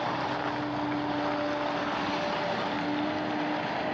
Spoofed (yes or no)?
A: no